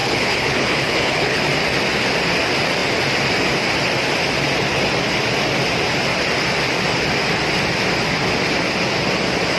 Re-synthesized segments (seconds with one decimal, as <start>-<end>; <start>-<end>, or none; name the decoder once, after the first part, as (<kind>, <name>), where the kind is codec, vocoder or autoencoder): 0.0-1.4 (codec, HILCodec)